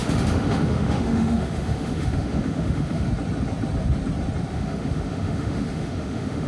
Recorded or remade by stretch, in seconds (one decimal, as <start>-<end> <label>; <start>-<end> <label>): 0.0-3.1 remade; 3.1-4.5 recorded; 4.5-6.5 remade